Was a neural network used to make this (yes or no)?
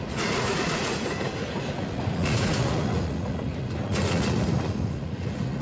yes